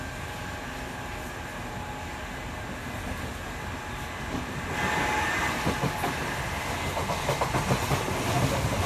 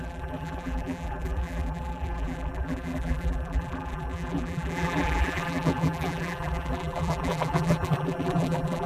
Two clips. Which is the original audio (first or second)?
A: first